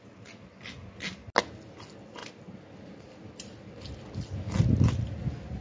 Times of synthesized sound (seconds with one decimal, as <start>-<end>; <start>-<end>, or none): none

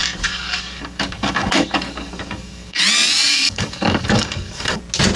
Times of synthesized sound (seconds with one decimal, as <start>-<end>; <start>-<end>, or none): 0.0-2.8; 3.3-4.8

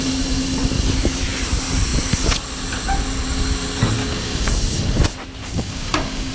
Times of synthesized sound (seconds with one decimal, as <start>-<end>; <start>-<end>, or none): 4.0-4.5; 5.4-6.3

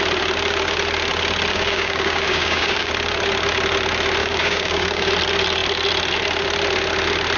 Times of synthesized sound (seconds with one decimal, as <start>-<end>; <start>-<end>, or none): 1.5-2.9; 4.2-5.1